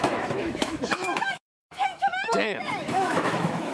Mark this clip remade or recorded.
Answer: remade